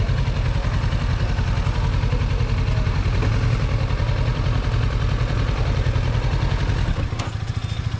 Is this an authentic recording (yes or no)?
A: yes